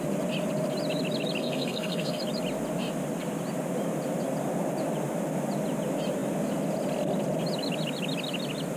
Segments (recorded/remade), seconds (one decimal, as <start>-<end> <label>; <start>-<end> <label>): 0.0-1.4 recorded; 1.4-2.2 remade; 2.2-8.8 recorded